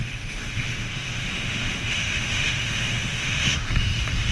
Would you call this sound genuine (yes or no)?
no